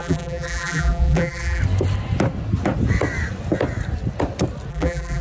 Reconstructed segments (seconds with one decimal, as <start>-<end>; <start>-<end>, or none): 0.0-1.6; 4.7-5.2